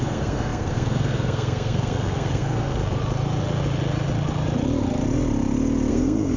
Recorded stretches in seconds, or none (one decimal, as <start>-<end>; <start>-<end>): 2.8-5.9